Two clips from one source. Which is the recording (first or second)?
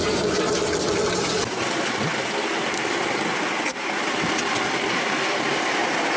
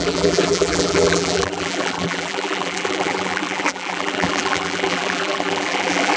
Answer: first